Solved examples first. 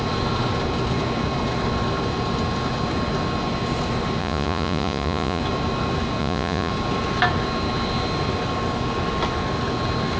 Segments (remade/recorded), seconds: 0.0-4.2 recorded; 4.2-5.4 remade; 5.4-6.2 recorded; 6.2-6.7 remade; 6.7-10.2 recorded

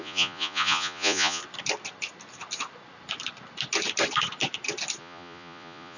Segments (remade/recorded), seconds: 0.0-1.4 remade; 1.4-5.0 recorded; 5.0-6.0 remade

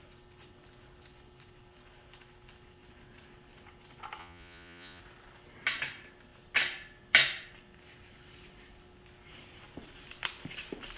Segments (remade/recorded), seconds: 0.0-4.2 recorded; 4.2-5.0 remade; 5.0-11.0 recorded

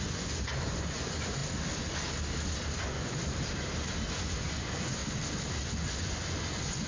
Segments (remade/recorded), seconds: 0.0-1.4 remade; 1.4-2.8 recorded; 2.8-3.2 remade; 3.2-4.1 recorded; 4.1-5.0 remade; 5.0-5.7 recorded; 5.7-6.9 remade

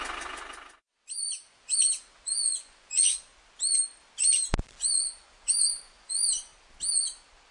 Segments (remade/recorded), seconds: 0.0-1.5 recorded; 1.5-3.3 remade; 3.3-4.9 recorded; 4.9-6.5 remade; 6.5-7.5 recorded

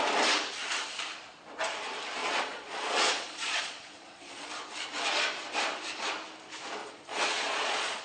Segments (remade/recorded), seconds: 0.0-2.2 recorded; 2.2-4.5 remade; 4.5-6.8 recorded; 6.8-8.0 remade